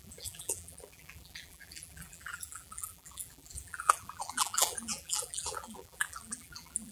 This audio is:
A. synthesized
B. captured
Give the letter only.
A